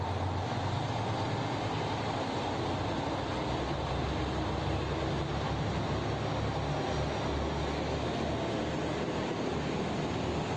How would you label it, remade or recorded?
recorded